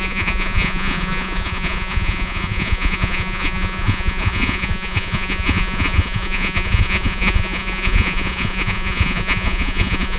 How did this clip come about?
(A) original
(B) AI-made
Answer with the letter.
B